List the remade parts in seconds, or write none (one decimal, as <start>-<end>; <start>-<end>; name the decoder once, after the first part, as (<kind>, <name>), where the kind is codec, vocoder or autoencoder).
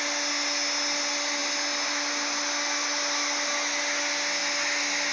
none